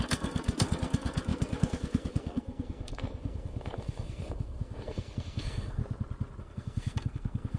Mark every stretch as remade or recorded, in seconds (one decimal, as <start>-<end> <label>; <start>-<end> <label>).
0.0-5.8 remade; 5.8-6.4 recorded; 6.4-7.6 remade